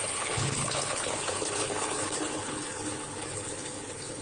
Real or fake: fake